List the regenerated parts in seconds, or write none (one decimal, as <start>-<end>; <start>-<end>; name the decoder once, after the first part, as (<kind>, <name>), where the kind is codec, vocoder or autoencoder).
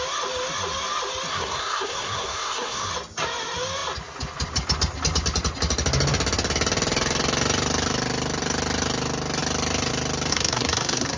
1.3-2.9 (codec, SNAC); 10.3-11.2